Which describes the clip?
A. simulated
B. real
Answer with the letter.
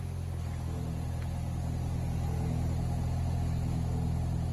B